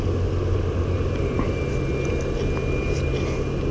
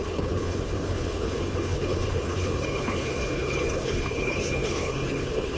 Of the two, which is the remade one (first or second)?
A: second